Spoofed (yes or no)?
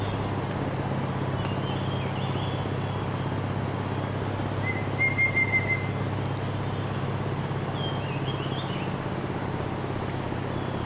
no